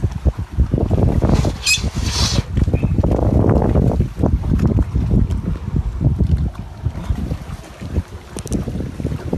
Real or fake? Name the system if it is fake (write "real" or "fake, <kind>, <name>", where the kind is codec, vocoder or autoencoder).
real